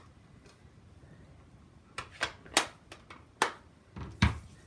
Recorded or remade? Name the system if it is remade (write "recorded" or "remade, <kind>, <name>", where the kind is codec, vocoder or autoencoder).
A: recorded